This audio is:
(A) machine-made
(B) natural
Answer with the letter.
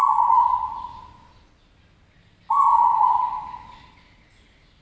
B